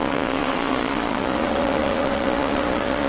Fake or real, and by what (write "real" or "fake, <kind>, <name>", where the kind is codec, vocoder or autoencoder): fake, vocoder, Vocos